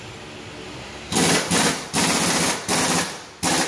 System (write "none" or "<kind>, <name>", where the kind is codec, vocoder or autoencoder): none